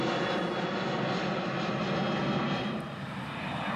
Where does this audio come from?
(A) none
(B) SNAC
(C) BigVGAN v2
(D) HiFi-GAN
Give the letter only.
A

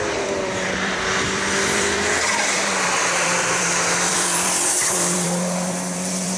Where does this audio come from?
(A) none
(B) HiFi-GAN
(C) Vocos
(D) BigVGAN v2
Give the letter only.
D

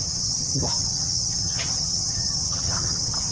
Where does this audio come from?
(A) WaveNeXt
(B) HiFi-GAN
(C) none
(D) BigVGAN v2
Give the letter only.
B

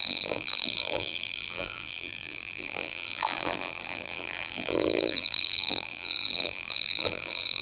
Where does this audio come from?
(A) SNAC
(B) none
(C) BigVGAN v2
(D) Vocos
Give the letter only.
C